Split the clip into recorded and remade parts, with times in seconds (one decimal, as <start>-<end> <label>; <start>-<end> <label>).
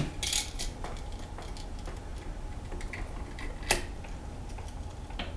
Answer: 0.0-5.4 recorded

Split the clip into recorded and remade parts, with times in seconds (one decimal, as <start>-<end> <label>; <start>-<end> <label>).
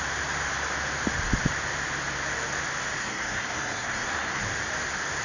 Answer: 0.0-3.0 recorded; 3.0-4.4 remade; 4.4-5.2 recorded